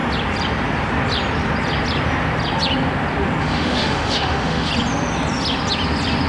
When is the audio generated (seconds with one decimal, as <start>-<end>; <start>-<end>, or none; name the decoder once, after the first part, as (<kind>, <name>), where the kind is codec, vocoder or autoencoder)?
3.4-4.7 (autoencoder, DAC-VAE)